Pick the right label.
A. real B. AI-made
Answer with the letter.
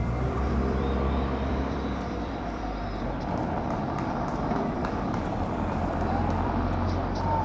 B